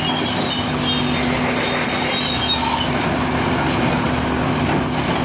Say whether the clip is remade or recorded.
recorded